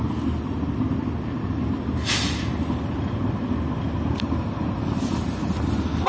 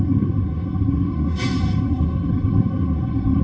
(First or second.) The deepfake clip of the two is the second